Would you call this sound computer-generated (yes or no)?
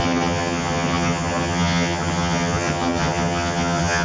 yes